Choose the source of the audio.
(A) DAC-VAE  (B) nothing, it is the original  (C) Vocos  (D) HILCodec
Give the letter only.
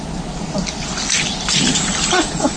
B